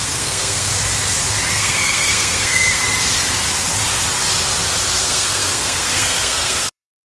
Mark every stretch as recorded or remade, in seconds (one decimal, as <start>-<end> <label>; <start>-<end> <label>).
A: 0.0-0.7 remade; 0.7-1.5 recorded; 1.5-2.8 remade; 2.8-5.0 recorded; 5.0-7.0 remade